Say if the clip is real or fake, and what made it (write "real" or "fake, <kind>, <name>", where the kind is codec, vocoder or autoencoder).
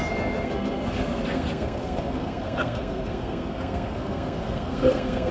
fake, codec, SNAC